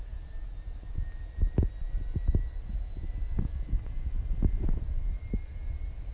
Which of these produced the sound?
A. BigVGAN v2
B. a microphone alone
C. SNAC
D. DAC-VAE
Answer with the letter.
A